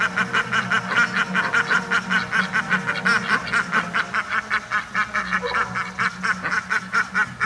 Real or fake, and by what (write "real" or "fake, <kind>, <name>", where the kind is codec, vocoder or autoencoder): real